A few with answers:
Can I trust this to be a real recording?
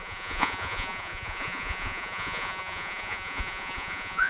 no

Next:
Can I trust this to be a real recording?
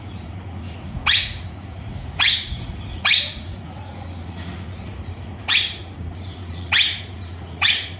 no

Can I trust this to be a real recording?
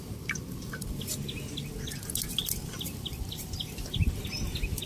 yes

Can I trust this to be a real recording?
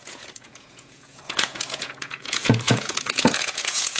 no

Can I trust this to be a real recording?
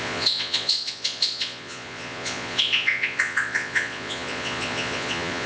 no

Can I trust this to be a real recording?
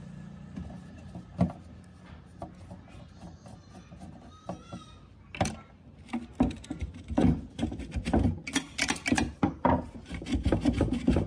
yes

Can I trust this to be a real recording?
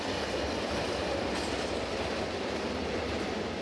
yes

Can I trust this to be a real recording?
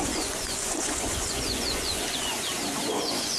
no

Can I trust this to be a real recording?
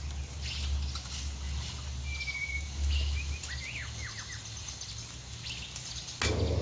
yes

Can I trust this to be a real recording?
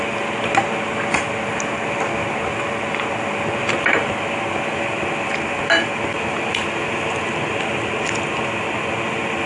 yes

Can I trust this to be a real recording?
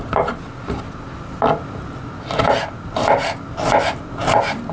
yes